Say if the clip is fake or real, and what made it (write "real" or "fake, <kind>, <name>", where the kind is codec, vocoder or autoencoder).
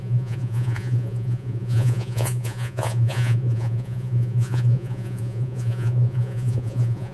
fake, vocoder, Vocos